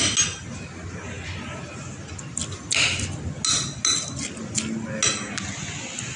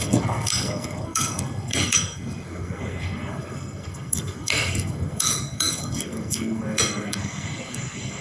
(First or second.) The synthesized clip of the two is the second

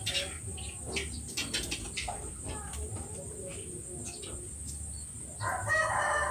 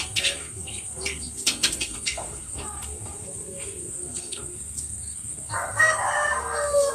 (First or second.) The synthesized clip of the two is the second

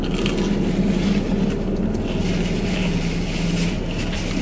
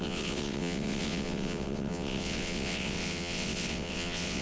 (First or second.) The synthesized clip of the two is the second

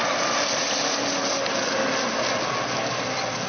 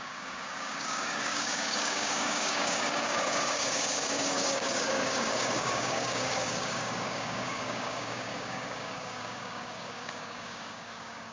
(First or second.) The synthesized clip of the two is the second